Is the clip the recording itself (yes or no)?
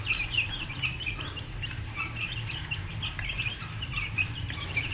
no